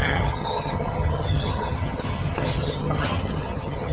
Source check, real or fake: fake